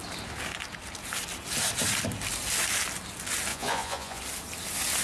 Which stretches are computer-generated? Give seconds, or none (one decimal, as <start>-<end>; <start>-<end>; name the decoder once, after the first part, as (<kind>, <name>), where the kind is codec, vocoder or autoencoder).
3.5-4.2 (vocoder, Vocos)